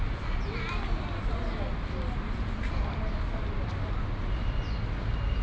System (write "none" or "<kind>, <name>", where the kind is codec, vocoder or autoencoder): none